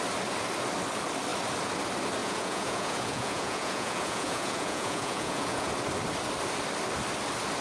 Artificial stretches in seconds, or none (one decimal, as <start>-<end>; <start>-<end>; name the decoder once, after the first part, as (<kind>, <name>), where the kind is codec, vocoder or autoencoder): 2.2-5.7 (vocoder, Vocos)